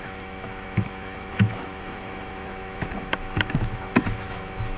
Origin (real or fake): fake